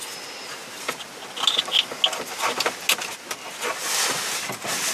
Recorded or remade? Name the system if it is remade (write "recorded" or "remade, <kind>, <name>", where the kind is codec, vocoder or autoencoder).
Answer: recorded